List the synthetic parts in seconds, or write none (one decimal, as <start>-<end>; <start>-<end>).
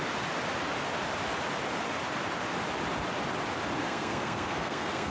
3.8-5.1